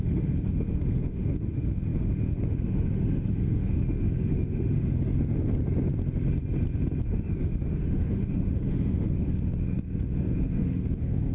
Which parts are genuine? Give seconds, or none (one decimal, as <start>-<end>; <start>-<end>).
5.1-7.0